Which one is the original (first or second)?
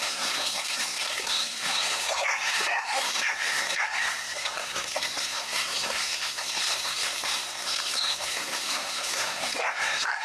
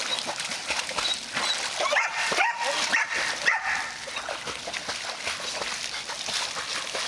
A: second